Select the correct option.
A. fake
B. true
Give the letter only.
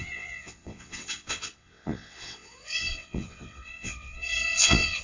A